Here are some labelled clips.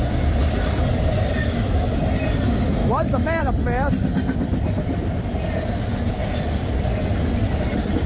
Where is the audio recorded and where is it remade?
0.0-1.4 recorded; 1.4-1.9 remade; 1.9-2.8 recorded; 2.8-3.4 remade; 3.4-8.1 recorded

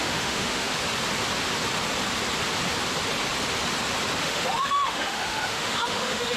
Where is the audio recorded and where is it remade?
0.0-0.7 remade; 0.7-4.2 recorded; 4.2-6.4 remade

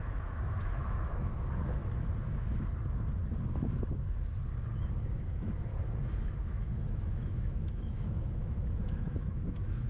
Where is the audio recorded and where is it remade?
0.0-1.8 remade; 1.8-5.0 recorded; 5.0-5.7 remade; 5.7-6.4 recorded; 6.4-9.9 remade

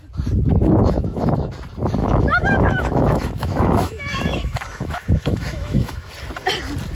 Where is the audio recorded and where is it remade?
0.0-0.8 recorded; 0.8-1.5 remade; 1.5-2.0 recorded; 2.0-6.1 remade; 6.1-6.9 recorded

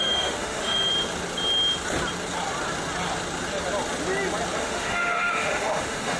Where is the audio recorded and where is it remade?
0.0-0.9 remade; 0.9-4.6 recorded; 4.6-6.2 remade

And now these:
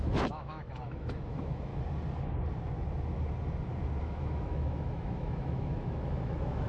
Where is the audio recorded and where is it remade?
0.0-1.7 remade; 1.7-4.0 recorded; 4.0-6.7 remade

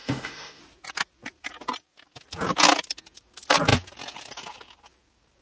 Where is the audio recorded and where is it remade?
0.0-0.6 remade; 0.6-5.4 recorded